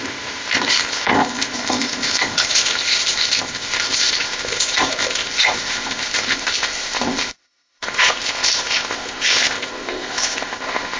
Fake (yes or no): yes